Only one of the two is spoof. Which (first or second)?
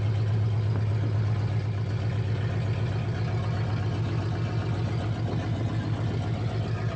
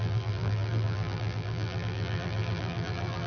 second